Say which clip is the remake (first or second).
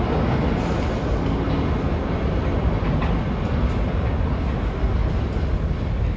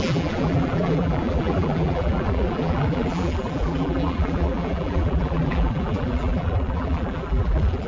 second